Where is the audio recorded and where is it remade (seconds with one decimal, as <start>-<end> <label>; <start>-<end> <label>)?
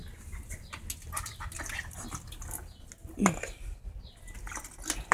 0.0-5.1 recorded